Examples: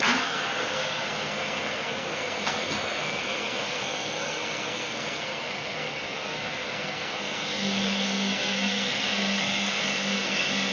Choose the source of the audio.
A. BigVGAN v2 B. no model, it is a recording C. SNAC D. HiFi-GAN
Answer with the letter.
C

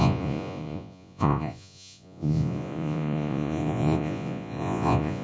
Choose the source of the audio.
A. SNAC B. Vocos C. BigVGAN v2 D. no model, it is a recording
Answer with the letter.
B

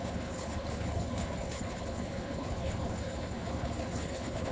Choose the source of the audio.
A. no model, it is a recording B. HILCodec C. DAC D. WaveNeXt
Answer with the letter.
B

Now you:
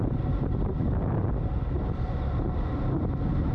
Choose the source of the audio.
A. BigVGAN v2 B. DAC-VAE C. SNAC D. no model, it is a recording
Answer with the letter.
D